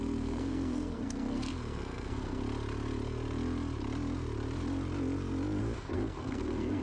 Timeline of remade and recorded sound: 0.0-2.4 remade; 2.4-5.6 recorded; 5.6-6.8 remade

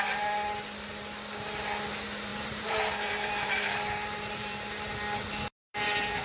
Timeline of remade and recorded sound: 0.0-2.3 recorded; 2.3-4.9 remade; 4.9-6.2 recorded

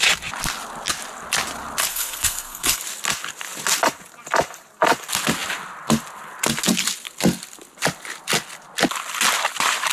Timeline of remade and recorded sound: 0.0-1.9 recorded; 1.9-2.8 remade; 2.8-9.9 recorded

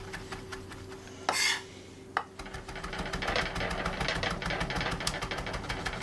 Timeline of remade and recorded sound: 0.0-6.0 recorded

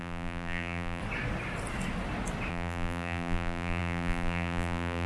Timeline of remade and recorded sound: 0.0-1.0 remade; 1.0-2.5 recorded; 2.5-5.1 remade